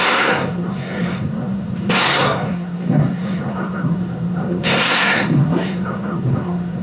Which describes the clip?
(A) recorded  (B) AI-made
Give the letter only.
B